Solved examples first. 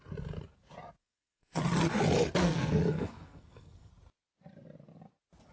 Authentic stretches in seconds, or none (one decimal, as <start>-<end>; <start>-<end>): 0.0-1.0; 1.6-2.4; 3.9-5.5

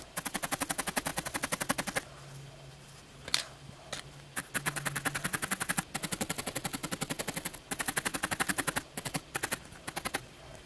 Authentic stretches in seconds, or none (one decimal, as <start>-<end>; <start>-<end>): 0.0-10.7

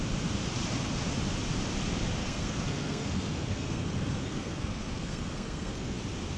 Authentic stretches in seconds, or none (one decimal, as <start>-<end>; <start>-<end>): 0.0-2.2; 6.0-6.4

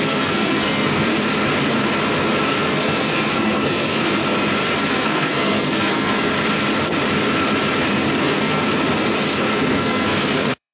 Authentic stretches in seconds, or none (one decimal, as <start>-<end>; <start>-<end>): 1.1-2.4; 4.2-4.9; 6.3-8.2; 8.6-9.5

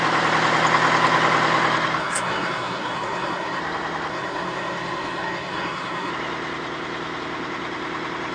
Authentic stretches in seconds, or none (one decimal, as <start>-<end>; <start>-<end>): 0.0-2.0; 3.6-4.1; 6.1-8.3

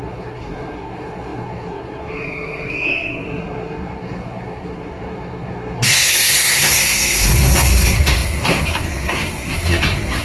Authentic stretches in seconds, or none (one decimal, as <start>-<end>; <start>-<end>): none